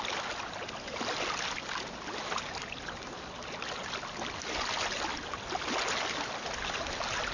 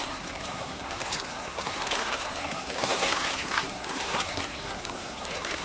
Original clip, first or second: first